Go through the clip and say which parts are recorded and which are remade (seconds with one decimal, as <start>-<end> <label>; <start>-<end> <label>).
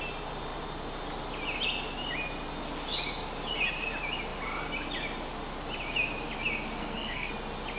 0.0-6.8 recorded; 6.8-7.3 remade; 7.3-7.8 recorded